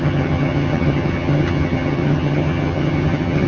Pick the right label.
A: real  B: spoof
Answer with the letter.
B